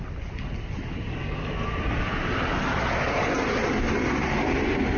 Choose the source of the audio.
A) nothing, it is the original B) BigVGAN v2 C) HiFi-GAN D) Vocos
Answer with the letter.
A